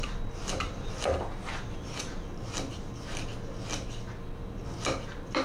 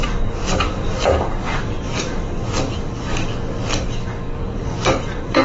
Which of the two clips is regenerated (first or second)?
second